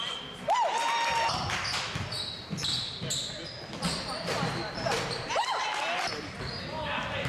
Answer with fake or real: real